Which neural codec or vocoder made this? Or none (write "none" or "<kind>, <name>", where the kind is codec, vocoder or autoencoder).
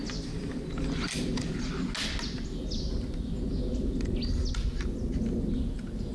none